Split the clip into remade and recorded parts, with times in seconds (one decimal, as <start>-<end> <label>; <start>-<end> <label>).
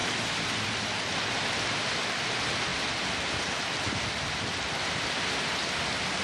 0.0-1.4 remade; 1.4-6.2 recorded